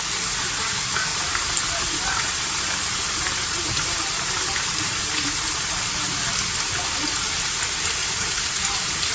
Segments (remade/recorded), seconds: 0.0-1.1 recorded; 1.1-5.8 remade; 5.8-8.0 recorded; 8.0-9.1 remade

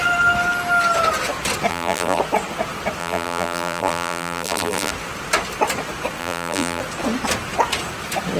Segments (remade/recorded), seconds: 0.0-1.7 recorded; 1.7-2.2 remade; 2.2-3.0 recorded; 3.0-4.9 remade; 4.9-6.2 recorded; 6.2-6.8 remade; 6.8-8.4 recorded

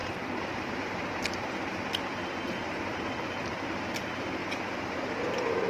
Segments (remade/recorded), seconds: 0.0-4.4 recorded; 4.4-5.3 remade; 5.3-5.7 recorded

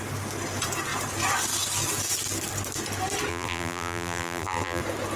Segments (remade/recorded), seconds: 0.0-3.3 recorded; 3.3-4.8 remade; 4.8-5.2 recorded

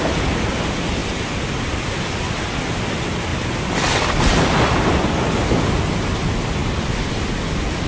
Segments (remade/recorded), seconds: 0.0-7.9 recorded

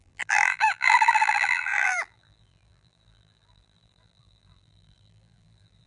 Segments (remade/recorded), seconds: 0.0-5.9 remade

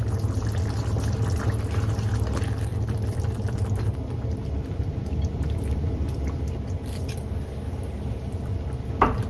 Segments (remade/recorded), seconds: 0.0-2.7 recorded; 2.7-7.4 remade; 7.4-9.3 recorded